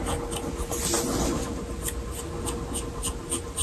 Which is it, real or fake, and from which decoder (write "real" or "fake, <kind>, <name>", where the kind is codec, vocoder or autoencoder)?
real